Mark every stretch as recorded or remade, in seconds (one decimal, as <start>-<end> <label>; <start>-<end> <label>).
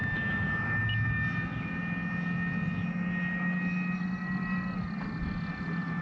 0.0-6.0 recorded